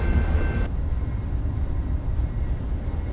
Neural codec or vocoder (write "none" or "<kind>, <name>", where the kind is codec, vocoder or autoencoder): none